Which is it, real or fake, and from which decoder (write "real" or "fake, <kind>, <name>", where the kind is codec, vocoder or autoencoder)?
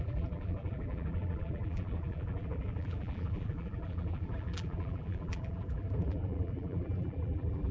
fake, vocoder, BigVGAN v2